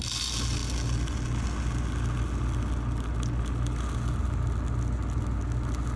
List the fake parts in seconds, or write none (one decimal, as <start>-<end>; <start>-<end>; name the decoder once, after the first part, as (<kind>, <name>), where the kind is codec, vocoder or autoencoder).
none